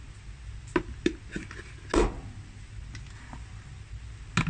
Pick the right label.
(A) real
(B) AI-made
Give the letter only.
A